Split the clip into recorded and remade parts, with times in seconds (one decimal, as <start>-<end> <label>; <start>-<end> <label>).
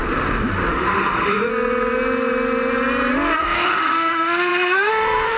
0.0-0.7 recorded; 0.7-1.5 remade; 1.5-3.4 recorded; 3.4-5.4 remade